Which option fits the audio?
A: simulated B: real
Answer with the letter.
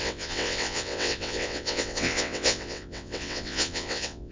A